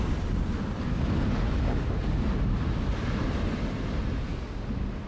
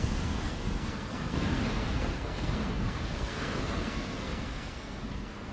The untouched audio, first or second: first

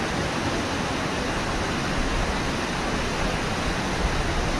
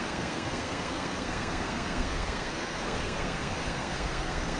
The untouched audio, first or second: first